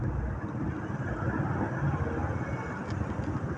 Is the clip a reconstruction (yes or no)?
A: no